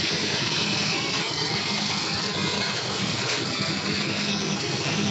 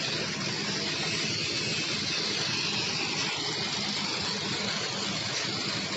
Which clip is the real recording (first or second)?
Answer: second